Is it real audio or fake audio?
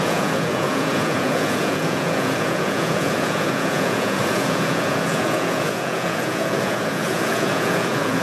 fake